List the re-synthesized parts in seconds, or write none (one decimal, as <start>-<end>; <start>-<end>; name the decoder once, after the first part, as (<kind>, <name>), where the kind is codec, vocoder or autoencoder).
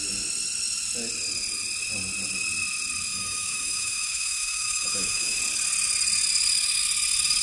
3.1-5.4 (autoencoder, DAC-VAE)